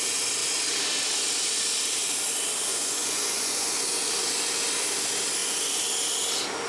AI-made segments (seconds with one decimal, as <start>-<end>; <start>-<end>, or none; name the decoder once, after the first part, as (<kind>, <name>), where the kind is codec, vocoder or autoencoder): 2.7-4.0 (vocoder, Vocos)